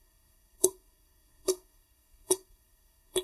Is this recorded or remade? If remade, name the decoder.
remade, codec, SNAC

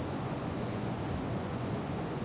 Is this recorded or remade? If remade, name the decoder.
remade, vocoder, Vocos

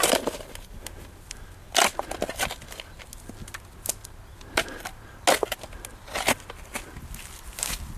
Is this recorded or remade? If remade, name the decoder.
recorded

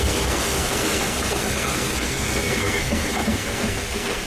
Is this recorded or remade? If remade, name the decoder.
remade, codec, SNAC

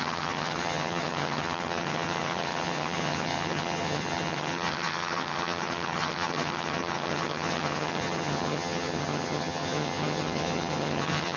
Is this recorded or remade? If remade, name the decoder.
remade, vocoder, HiFi-GAN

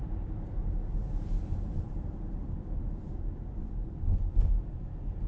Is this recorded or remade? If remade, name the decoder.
recorded